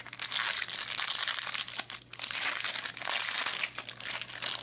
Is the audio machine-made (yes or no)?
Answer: no